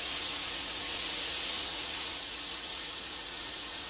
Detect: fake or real fake